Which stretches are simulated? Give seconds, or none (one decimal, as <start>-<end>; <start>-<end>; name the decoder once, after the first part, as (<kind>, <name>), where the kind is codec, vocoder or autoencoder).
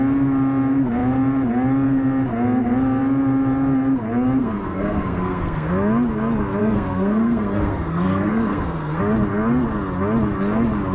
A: 4.4-5.7 (codec, SNAC); 6.6-9.0